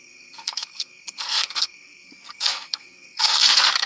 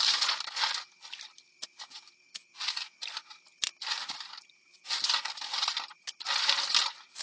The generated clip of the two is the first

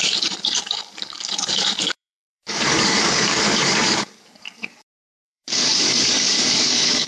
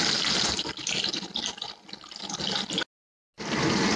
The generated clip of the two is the first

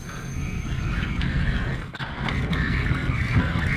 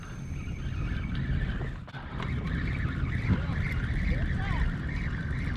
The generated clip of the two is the first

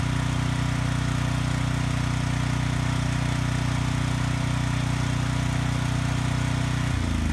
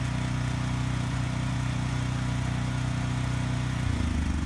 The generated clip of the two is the second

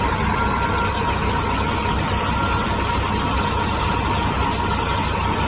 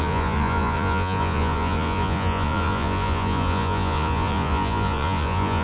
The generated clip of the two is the second